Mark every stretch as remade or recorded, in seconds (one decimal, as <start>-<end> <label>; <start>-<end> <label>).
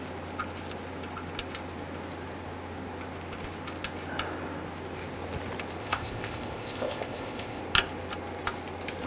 0.0-5.8 recorded; 5.8-7.6 remade; 7.6-9.1 recorded